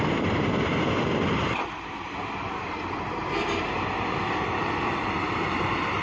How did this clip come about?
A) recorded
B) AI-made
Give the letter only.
B